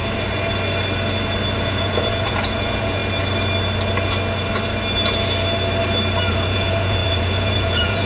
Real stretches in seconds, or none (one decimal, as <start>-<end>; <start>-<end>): 0.0-1.6; 3.0-6.3